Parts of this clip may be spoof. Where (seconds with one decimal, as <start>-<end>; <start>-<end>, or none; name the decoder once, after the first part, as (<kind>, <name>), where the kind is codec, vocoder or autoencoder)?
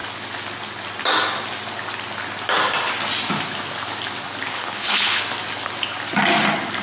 4.5-5.2 (codec, HILCodec)